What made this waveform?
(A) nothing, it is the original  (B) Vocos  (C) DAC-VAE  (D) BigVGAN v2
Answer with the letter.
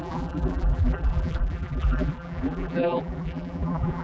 D